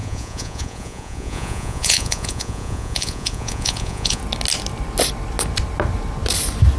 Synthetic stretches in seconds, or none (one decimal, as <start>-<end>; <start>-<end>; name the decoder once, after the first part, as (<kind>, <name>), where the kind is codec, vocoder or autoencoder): 0.0-4.2 (vocoder, Vocos)